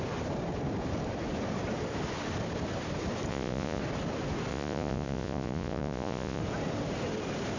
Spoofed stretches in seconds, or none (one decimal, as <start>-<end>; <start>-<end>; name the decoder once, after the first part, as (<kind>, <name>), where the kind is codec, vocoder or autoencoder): 3.3-3.8 (vocoder, Vocos); 4.5-6.4